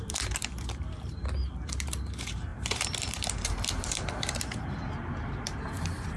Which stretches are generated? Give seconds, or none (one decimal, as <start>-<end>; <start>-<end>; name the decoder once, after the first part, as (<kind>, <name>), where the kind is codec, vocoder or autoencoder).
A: 0.0-6.2 (vocoder, BigVGAN v2)